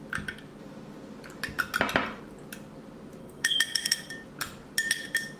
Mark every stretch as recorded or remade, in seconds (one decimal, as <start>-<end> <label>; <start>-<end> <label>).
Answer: 0.0-3.2 recorded; 3.2-4.1 remade; 4.1-5.4 recorded